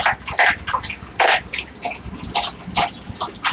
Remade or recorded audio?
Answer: recorded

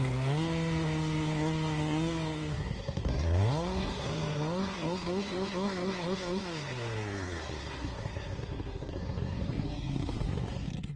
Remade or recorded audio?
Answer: remade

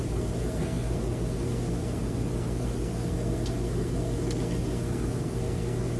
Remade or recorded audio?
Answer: remade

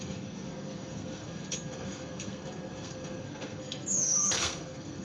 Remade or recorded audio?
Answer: remade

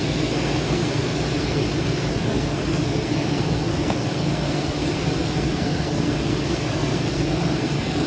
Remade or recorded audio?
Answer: remade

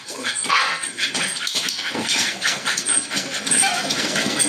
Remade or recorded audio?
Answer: remade